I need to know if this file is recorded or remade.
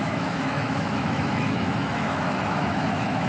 remade